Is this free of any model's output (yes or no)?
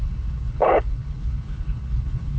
no